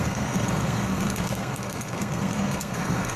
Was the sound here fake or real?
fake